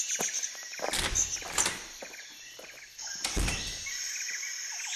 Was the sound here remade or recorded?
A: recorded